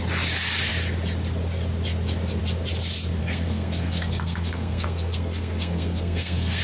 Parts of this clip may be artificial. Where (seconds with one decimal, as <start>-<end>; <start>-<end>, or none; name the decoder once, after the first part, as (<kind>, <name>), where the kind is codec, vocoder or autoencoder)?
3.2-6.6 (codec, SNAC)